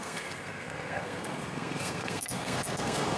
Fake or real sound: fake